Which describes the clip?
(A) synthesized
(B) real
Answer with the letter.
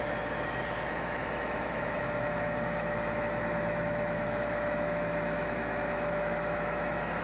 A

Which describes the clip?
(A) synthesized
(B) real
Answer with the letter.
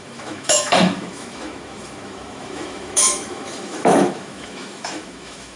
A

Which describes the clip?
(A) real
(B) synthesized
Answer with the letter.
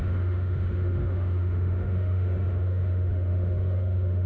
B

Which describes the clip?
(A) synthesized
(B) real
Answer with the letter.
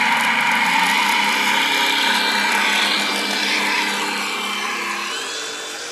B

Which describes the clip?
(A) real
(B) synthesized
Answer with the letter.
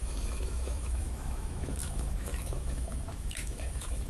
B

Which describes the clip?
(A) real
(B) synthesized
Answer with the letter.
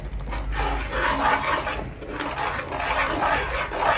A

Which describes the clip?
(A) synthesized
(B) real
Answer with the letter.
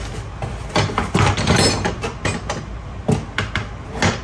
B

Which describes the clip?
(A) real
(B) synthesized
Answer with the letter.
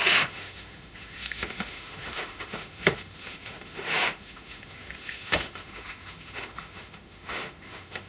B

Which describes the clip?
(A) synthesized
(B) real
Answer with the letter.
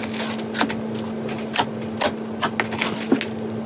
B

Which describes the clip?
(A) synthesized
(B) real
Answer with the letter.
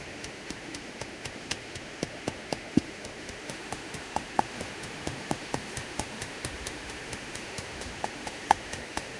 A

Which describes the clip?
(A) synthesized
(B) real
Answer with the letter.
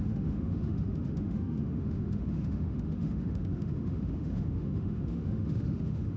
A